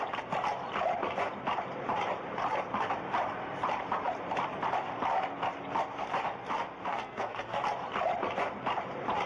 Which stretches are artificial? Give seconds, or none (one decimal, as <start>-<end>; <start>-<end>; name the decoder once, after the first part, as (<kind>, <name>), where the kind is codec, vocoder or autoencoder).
6.9-7.6 (codec, SNAC)